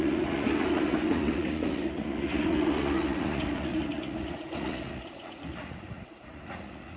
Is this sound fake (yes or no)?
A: yes